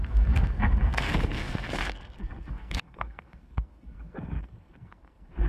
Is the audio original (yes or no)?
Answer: no